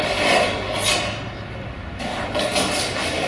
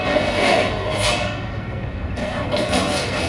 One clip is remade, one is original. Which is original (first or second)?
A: first